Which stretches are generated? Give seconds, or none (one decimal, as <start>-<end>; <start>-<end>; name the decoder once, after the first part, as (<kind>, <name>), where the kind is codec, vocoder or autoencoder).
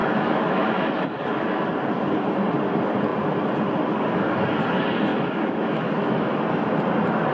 0.0-1.7 (autoencoder, DAC-VAE); 5.1-6.4